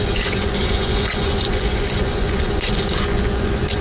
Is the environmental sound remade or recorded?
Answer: remade